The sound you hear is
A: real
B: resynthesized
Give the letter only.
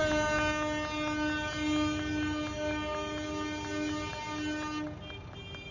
A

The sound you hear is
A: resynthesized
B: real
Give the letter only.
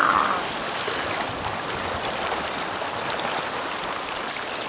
B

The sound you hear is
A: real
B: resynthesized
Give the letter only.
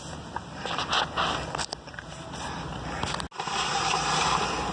A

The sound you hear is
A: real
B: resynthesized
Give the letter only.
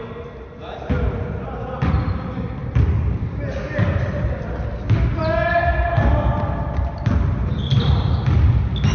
A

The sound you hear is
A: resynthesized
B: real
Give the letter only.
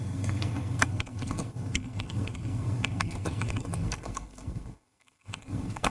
A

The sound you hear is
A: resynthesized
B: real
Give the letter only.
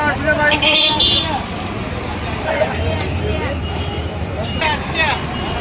B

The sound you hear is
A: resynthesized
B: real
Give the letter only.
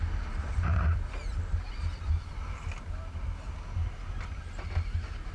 B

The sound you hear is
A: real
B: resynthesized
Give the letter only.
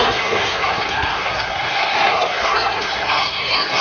B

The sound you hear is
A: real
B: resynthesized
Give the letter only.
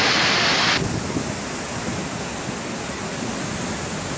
A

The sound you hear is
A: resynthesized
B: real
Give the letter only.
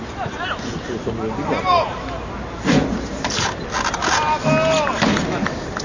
B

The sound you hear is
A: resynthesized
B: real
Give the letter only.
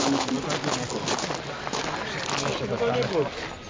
B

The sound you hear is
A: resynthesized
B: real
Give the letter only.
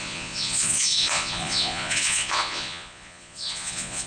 A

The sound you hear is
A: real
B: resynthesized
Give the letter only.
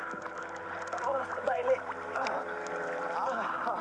B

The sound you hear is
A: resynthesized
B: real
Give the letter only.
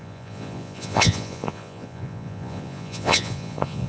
A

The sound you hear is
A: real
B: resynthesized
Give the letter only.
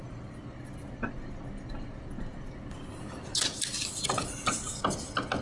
A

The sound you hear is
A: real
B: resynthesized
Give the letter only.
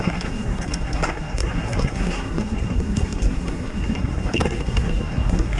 B